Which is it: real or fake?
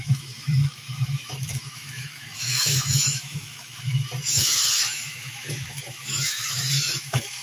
fake